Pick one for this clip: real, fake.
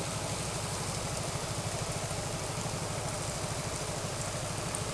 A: real